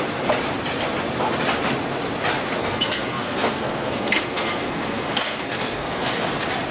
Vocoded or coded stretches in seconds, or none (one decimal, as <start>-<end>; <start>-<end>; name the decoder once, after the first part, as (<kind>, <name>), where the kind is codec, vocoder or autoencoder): 2.6-6.1 (codec, SNAC)